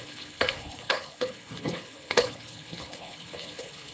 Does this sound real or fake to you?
fake